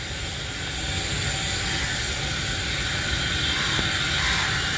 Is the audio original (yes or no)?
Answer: yes